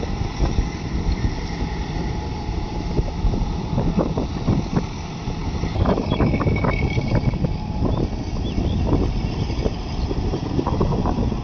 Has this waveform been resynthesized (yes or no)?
yes